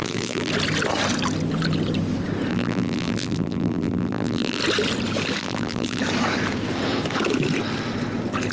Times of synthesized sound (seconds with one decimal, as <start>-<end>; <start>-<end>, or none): 0.0-0.5; 2.5-4.6; 5.4-6.0